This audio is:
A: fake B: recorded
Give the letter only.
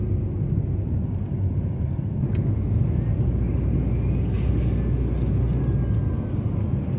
B